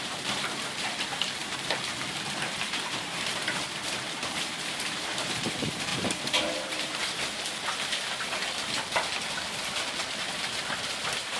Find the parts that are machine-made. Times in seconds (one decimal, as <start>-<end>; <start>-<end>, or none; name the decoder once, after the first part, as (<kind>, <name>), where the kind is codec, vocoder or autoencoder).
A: 0.0-1.4 (vocoder, BigVGAN v2); 2.4-7.0; 11.0-11.4

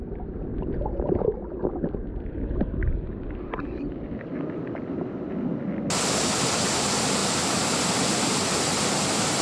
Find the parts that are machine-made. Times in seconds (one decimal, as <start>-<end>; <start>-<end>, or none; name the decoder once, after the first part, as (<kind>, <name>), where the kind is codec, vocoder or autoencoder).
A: 2.8-3.3 (vocoder, BigVGAN v2)

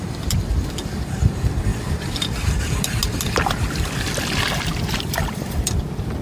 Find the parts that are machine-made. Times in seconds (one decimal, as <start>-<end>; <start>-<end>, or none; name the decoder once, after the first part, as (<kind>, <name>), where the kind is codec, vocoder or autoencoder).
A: none

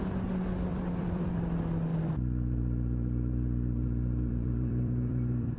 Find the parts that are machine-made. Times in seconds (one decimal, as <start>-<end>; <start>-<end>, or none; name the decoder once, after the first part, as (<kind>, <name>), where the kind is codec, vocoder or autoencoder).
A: 0.7-1.3 (vocoder, BigVGAN v2); 1.9-5.6

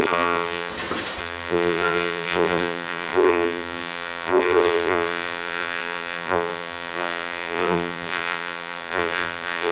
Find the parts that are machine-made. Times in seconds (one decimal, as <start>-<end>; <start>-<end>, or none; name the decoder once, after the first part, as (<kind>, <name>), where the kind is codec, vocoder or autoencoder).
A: 0.0-0.7 (vocoder, BigVGAN v2); 1.2-9.7

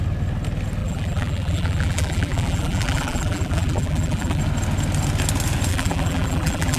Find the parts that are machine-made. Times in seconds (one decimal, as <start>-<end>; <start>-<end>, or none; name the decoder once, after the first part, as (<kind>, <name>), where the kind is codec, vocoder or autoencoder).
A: 0.8-4.4 (vocoder, BigVGAN v2); 5.7-6.8